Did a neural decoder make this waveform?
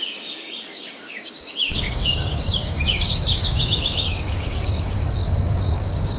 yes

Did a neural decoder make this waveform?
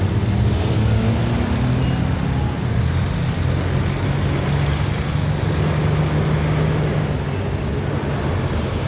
no